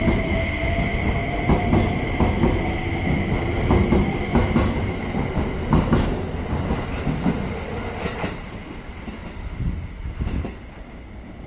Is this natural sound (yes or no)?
yes